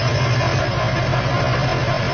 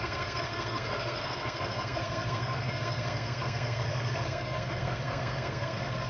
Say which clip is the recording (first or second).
first